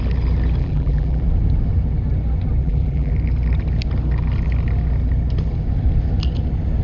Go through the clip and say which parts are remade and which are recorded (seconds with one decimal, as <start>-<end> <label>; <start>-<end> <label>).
0.0-0.6 recorded; 0.6-1.2 remade; 1.2-2.6 recorded; 2.6-3.1 remade; 3.1-6.8 recorded